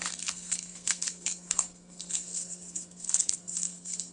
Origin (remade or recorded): remade